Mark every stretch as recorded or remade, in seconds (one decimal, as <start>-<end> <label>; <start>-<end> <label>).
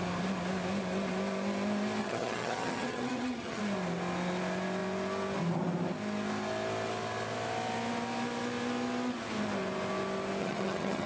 0.0-2.0 recorded; 2.0-3.6 remade; 3.6-10.4 recorded; 10.4-11.1 remade